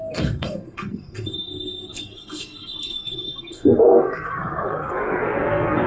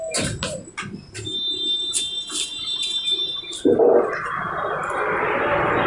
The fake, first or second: first